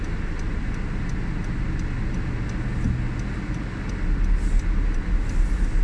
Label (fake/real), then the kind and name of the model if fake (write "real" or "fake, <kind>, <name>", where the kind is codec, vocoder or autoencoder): real